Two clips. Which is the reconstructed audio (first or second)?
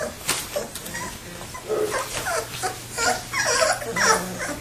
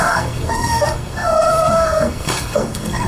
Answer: second